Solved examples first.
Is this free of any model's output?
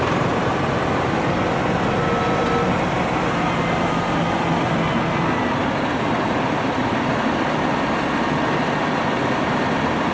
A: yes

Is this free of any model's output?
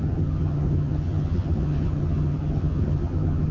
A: no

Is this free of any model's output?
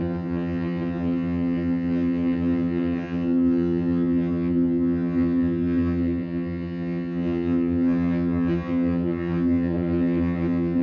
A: no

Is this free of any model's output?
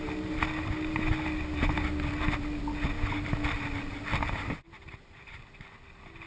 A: yes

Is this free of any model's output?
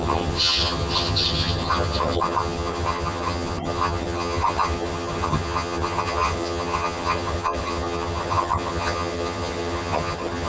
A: no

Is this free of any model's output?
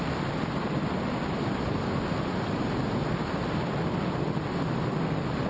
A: yes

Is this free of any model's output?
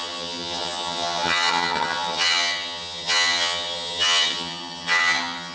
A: no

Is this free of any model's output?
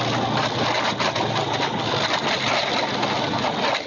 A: yes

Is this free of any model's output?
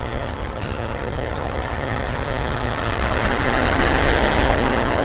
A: no